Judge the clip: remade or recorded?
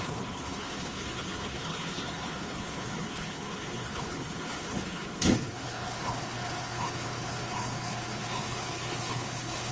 remade